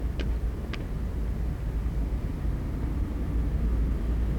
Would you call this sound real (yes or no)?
yes